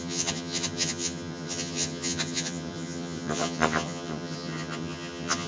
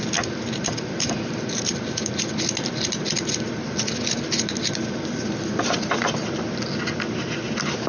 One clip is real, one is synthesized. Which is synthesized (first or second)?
first